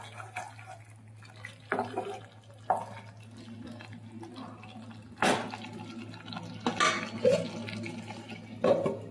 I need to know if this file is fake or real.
real